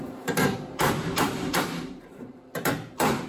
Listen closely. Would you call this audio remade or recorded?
remade